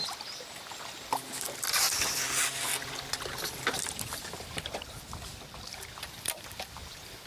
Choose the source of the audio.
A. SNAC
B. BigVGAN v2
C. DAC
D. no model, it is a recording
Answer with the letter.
D